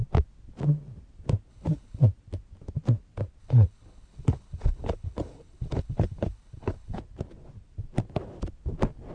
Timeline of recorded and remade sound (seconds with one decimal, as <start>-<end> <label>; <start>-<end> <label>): 0.0-1.5 recorded; 1.5-2.0 remade; 2.0-3.4 recorded; 3.4-7.0 remade; 7.0-9.1 recorded